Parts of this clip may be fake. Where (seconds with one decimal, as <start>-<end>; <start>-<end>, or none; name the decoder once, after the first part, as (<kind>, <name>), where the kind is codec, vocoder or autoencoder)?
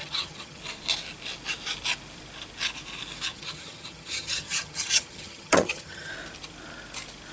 0.0-0.6 (vocoder, HiFi-GAN); 3.3-6.1